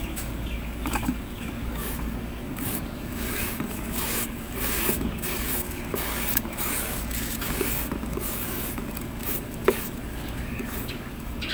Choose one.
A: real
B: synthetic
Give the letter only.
B